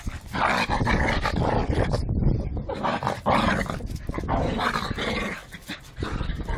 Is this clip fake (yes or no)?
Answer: no